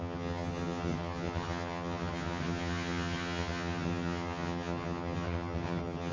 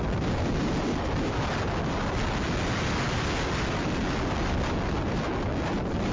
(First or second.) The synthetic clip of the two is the first